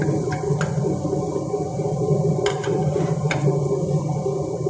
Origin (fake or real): real